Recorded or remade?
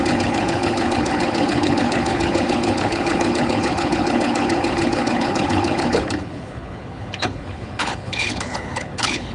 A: remade